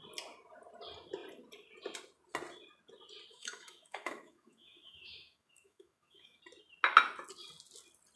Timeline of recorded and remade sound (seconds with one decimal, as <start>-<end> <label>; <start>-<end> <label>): 0.0-3.3 recorded; 3.3-6.4 remade; 6.4-8.2 recorded